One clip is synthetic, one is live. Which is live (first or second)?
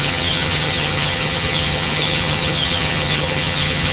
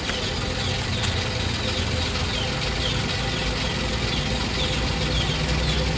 second